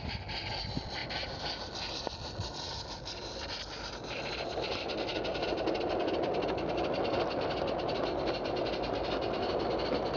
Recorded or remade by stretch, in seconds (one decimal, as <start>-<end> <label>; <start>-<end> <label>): 0.0-10.2 recorded